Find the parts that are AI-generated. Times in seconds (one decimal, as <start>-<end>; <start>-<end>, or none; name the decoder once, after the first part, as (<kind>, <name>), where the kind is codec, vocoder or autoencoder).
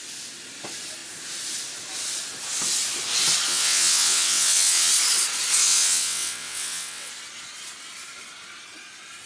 3.5-4.9 (vocoder, WaveNeXt); 5.6-7.1